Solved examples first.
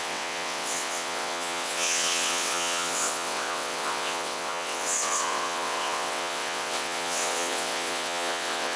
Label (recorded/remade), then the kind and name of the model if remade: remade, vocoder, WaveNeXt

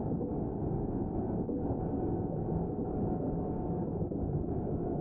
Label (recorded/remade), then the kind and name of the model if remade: remade, codec, DAC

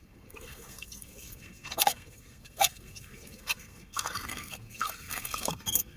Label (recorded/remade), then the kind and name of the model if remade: remade, codec, SNAC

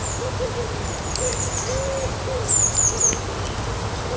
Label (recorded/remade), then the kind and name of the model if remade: recorded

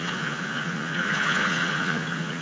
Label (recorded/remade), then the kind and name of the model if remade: remade, vocoder, Vocos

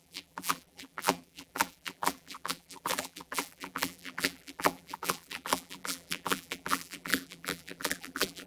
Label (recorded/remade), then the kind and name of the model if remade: remade, vocoder, BigVGAN v2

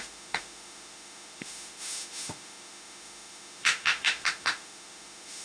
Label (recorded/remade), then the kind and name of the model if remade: remade, autoencoder, DAC-VAE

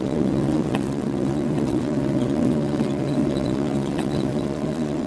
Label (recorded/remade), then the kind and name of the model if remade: remade, vocoder, WaveNeXt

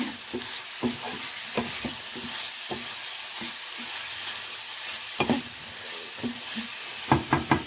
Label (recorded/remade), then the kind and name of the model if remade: recorded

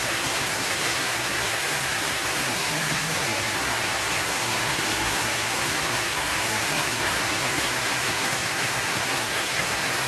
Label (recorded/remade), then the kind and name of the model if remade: remade, codec, SNAC